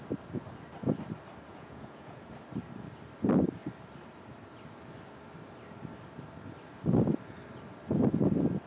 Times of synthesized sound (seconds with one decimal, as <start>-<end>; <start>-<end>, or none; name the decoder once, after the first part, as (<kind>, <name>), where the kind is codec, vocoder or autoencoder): 1.5-2.3 (vocoder, Vocos)